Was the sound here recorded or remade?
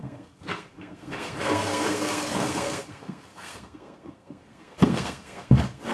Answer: remade